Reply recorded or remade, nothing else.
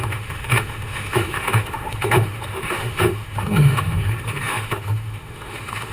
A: remade